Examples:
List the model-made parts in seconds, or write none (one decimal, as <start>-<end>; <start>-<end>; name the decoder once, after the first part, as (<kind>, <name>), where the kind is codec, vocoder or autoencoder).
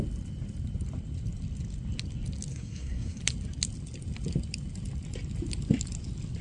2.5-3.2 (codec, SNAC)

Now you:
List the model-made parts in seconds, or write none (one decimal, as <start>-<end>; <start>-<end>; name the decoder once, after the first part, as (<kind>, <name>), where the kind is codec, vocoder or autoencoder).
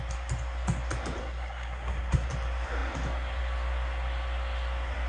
1.2-2.3 (codec, SNAC)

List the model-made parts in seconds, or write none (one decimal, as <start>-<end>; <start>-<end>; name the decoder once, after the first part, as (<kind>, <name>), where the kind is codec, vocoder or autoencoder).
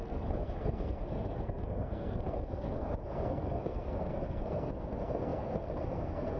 0.0-6.4 (codec, SNAC)